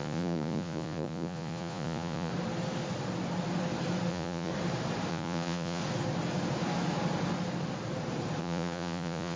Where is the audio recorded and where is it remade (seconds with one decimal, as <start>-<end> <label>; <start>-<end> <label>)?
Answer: 0.0-2.3 remade; 2.3-4.1 recorded; 4.1-4.5 remade; 4.5-5.1 recorded; 5.1-5.8 remade; 5.8-8.4 recorded; 8.4-9.4 remade